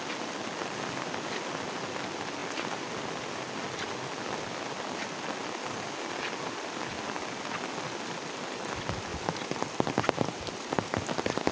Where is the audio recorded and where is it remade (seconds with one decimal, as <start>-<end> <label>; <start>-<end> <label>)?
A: 0.0-11.5 recorded